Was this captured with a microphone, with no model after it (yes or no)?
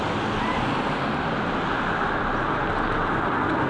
yes